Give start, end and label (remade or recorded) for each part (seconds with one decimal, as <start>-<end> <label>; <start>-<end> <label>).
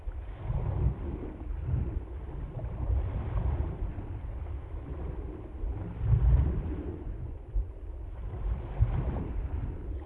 0.0-6.9 recorded; 6.9-7.7 remade; 7.7-10.1 recorded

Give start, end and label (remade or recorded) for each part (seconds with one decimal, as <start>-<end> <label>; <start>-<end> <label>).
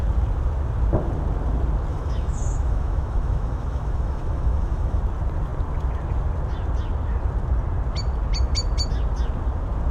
0.0-1.9 recorded; 1.9-5.0 remade; 5.0-9.9 recorded